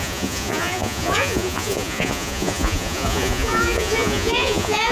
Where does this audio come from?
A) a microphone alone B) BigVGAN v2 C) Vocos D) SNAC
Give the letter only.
C